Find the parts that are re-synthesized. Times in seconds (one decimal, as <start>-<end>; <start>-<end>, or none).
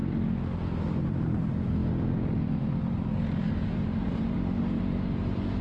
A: 1.0-1.8; 2.6-5.6